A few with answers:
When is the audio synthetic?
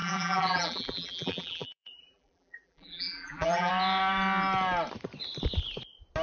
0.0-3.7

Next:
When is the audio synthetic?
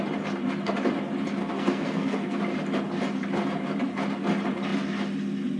1.4-2.4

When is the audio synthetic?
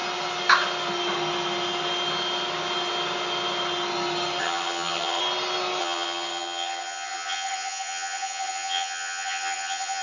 4.4-5.2; 5.8-10.0